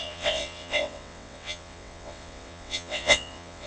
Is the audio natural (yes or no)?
no